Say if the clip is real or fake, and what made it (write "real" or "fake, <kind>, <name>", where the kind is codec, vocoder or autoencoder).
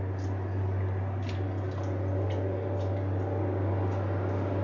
real